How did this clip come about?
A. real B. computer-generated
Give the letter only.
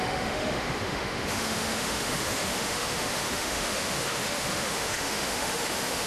B